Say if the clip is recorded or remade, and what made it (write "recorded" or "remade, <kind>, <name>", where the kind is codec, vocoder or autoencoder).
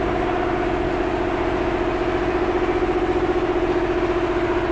recorded